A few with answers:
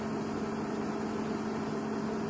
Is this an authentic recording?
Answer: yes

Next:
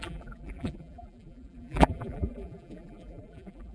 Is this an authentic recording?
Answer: no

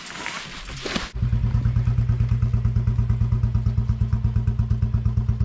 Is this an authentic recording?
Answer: yes